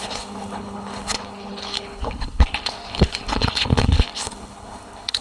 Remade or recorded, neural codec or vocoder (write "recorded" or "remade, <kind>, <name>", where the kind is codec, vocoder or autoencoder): remade, codec, HILCodec